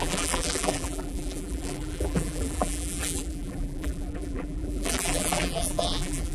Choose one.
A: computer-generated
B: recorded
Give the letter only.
A